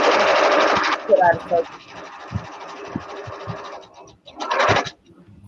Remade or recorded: recorded